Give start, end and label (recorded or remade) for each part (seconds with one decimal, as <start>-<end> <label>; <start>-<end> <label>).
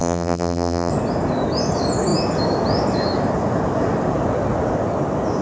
0.0-0.9 remade; 0.9-5.4 recorded